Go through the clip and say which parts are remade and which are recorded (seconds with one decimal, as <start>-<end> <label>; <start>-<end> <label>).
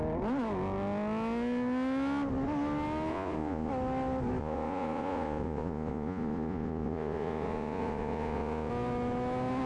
0.0-3.1 recorded; 3.1-3.7 remade; 3.7-4.4 recorded; 4.4-8.7 remade; 8.7-9.7 recorded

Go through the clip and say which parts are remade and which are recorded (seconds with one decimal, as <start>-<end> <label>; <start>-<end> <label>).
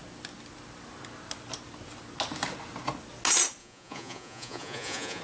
0.0-3.6 recorded; 3.6-5.2 remade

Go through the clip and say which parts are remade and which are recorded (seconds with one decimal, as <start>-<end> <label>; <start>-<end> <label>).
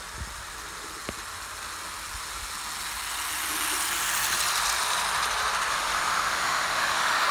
0.0-5.7 recorded; 5.7-7.3 remade